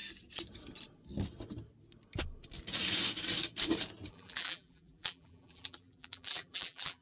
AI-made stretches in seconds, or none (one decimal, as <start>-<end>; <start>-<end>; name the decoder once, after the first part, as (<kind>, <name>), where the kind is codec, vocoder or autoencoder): 4.1-7.0 (vocoder, BigVGAN v2)